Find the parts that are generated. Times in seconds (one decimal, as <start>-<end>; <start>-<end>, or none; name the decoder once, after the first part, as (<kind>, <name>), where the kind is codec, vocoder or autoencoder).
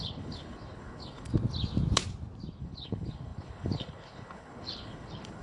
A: 0.0-1.3 (codec, HILCodec); 2.6-5.4